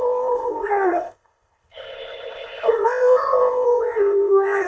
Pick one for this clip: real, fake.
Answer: fake